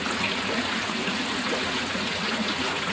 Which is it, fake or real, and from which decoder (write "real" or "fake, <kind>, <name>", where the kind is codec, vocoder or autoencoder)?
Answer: fake, vocoder, Vocos